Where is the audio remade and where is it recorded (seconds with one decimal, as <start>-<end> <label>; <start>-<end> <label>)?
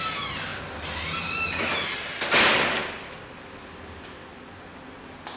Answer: 0.0-5.4 recorded